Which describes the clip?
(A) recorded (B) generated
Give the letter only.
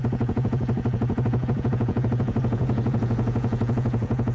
B